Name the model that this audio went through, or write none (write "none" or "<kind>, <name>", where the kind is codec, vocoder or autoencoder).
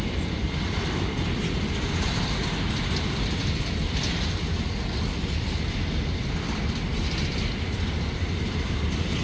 none